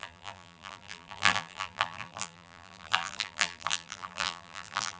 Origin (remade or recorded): remade